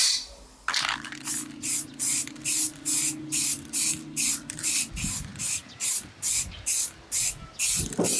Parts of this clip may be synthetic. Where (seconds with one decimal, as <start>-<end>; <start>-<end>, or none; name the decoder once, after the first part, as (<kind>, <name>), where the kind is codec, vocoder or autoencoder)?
none